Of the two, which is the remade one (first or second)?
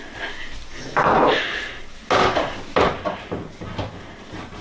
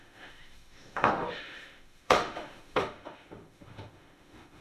second